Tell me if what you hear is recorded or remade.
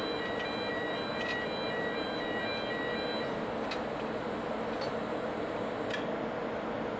recorded